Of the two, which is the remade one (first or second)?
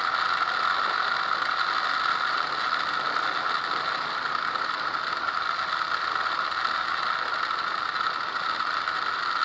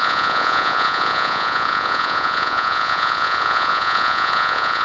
second